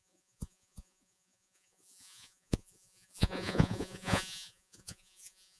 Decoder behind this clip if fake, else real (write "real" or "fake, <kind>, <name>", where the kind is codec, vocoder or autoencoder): fake, vocoder, Vocos